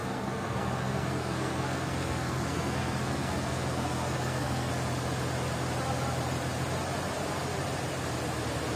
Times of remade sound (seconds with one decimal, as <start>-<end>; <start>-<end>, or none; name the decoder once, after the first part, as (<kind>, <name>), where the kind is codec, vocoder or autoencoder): 0.0-4.7 (codec, SNAC)